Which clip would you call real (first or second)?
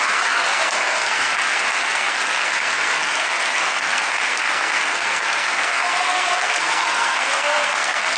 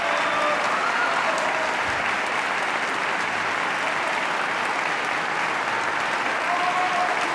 second